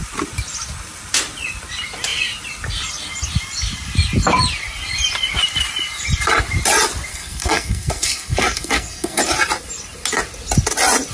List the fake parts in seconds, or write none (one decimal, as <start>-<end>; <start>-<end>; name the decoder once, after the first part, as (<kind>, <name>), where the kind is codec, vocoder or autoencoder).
7.1-9.2 (codec, SNAC)